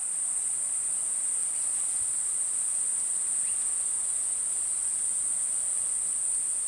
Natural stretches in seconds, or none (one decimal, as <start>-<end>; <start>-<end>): 0.0-6.7